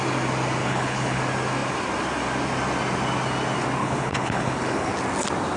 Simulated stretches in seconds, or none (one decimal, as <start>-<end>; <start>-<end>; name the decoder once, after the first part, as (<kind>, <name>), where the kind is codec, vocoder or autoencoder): 0.6-1.2 (codec, HILCodec); 3.8-4.9